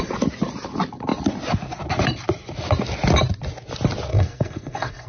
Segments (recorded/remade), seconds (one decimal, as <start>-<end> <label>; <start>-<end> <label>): 0.0-4.1 recorded; 4.1-5.1 remade